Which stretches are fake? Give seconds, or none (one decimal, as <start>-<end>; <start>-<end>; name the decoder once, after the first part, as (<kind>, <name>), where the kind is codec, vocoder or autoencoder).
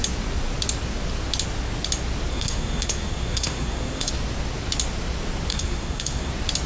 2.3-4.1 (codec, SNAC); 5.5-6.3